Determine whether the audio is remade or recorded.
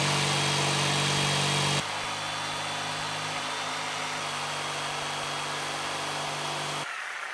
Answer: recorded